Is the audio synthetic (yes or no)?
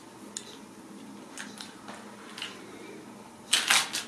no